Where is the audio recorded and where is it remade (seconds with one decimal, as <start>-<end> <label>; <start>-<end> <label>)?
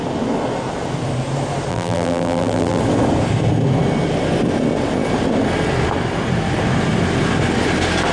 0.0-1.7 recorded; 1.7-2.8 remade; 2.8-8.1 recorded